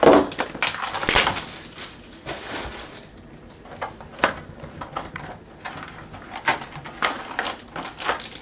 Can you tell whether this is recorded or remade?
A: recorded